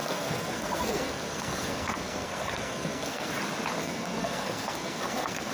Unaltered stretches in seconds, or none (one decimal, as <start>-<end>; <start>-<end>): 3.3-3.8